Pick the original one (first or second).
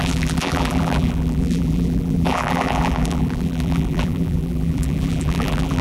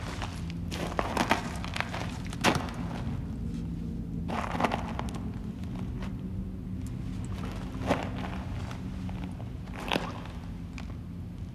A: second